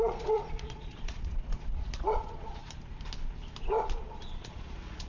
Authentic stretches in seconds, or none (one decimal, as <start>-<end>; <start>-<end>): 2.6-4.4